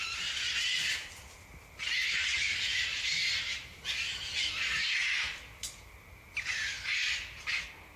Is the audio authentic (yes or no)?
yes